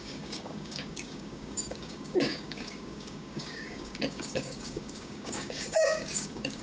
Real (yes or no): no